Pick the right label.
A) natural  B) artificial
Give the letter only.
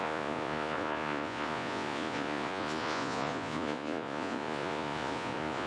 B